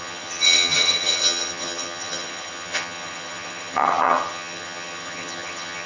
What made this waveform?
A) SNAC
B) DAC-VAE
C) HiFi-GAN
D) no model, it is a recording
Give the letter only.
C